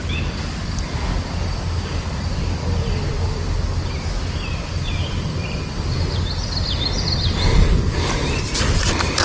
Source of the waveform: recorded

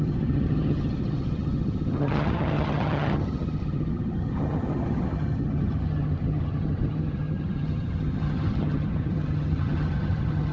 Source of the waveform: remade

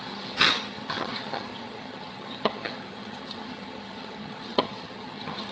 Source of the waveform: remade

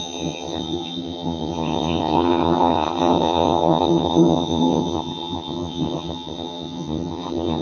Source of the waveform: remade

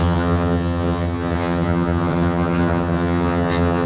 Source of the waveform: remade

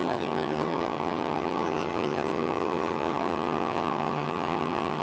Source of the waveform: remade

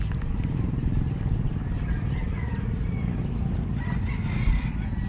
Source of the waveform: recorded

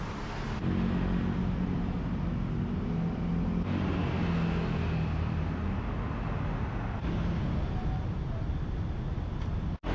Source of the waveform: recorded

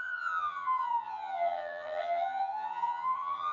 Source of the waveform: remade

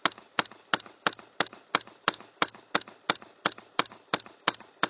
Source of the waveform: recorded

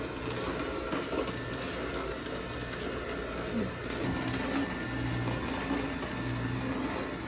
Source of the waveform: recorded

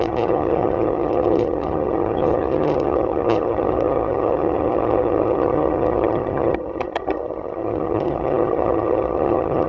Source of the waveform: remade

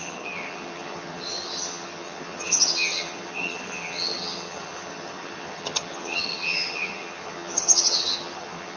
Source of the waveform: remade